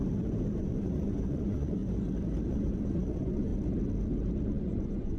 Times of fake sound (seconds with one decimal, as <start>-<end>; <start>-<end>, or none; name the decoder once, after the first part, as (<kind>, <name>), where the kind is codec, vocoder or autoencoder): 0.6-1.8 (vocoder, Vocos); 2.5-3.5; 4.5-5.2